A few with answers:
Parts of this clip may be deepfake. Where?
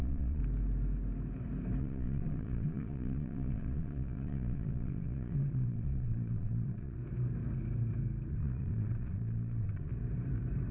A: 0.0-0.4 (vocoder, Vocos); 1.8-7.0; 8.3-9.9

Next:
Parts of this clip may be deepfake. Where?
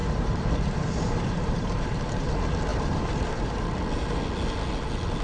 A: 0.0-2.3 (vocoder, BigVGAN v2); 2.7-3.7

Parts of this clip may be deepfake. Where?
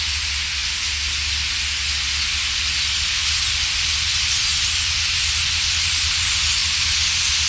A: none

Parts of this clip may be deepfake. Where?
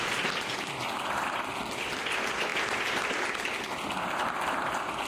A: none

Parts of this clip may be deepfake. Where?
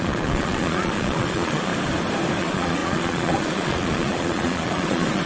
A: 0.0-1.7 (vocoder, Vocos); 2.4-5.3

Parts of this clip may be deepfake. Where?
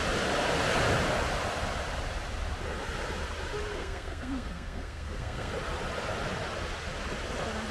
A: 3.7-5.5 (codec, SNAC)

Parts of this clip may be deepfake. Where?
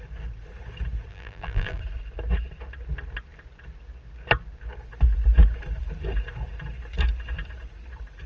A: 1.1-1.8 (vocoder, BigVGAN v2)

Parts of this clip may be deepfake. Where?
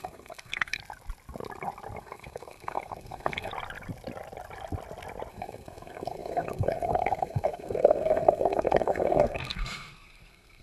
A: 0.0-0.8 (codec, SNAC); 2.0-3.5; 5.3-10.6